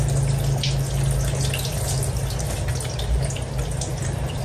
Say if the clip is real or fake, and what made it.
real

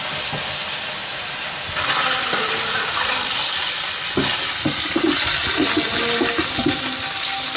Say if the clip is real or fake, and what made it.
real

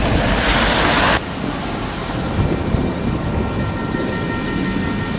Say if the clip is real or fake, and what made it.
real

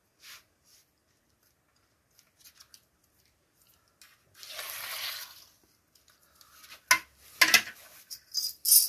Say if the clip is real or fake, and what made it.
real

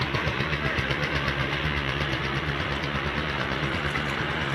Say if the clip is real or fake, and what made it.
fake, vocoder, Vocos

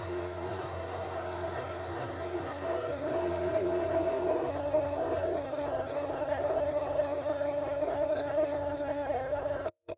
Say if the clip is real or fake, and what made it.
fake, codec, SNAC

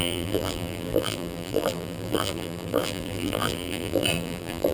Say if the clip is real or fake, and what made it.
fake, vocoder, BigVGAN v2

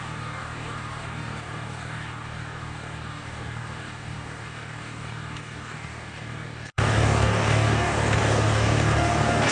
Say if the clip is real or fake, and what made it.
fake, codec, DAC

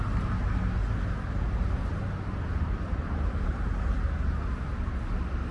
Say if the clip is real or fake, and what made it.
real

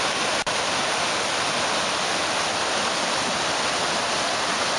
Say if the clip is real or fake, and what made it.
real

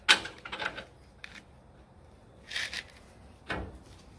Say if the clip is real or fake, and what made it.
real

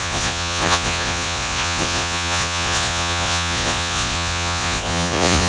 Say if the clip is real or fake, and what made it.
fake, vocoder, Vocos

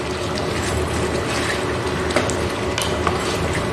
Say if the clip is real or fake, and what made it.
real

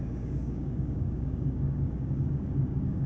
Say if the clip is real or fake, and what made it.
fake, codec, DAC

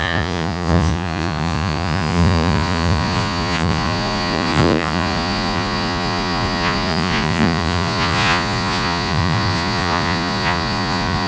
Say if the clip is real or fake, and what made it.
fake, vocoder, Vocos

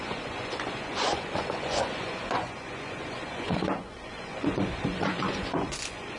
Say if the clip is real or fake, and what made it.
fake, vocoder, Vocos